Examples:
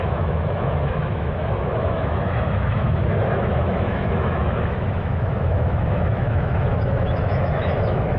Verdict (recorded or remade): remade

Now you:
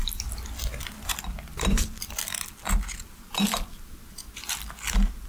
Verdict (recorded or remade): recorded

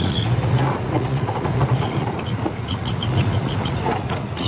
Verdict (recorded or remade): remade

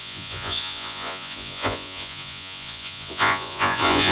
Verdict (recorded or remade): remade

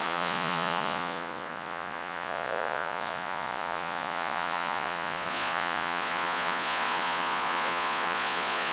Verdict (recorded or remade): remade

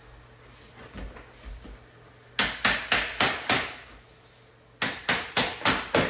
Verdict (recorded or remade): recorded